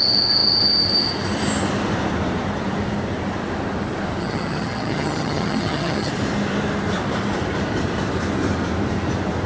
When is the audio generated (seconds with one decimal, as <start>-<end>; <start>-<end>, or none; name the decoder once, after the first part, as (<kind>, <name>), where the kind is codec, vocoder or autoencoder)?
4.2-6.1 (vocoder, HiFi-GAN)